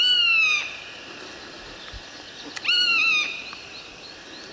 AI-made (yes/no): yes